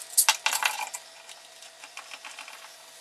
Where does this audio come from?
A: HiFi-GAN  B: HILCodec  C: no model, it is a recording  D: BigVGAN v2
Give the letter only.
C